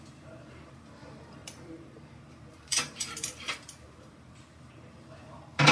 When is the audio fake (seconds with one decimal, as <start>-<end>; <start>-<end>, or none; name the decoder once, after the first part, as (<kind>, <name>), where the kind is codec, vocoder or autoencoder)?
0.0-5.7 (vocoder, BigVGAN v2)